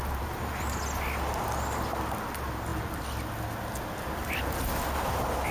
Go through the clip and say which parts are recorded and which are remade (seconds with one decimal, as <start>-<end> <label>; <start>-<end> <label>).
0.0-5.5 recorded